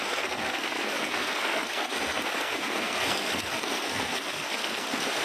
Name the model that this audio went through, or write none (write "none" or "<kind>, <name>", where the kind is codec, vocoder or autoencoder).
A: codec, SNAC